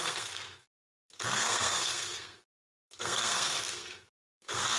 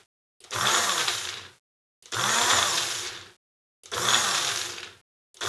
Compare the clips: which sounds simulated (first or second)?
first